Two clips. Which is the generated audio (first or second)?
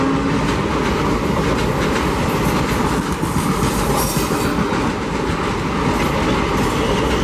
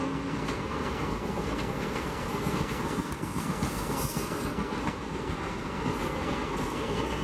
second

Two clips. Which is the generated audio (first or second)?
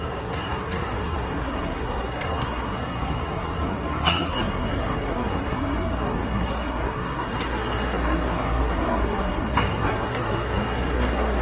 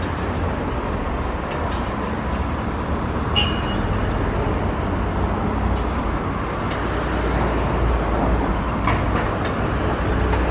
first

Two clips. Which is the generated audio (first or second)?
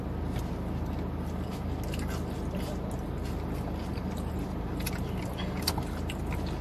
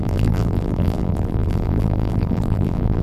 second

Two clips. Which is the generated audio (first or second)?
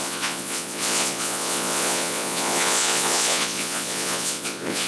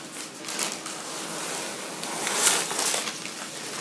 first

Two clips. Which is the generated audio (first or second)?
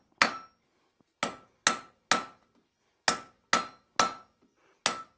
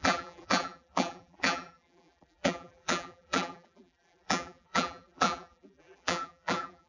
second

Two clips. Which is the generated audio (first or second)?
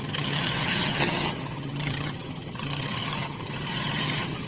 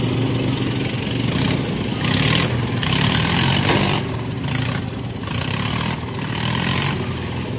first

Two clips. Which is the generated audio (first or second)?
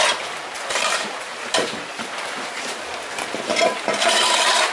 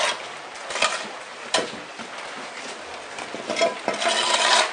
first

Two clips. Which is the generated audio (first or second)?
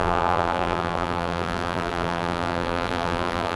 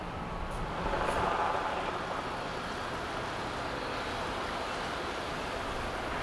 first